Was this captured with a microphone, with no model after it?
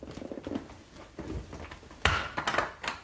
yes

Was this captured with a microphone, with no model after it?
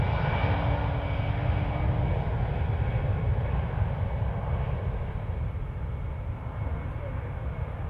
yes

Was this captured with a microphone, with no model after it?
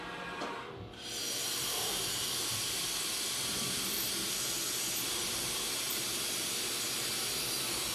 no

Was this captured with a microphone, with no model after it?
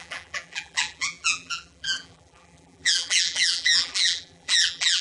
no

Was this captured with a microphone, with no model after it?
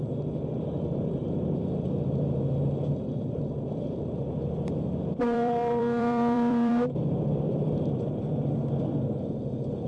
no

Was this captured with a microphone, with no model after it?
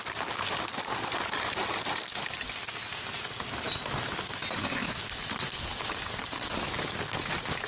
yes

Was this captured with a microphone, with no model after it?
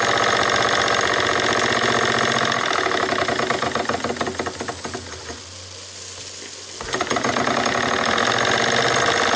yes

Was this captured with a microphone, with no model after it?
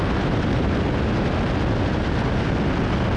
yes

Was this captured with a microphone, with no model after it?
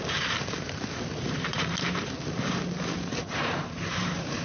no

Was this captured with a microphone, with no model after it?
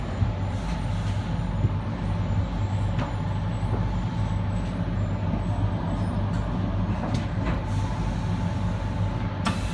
yes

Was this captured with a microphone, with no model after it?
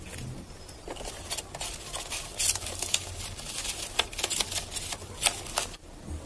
yes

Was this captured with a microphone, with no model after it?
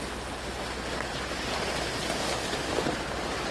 yes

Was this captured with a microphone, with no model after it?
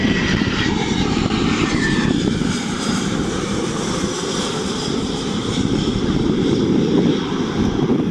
no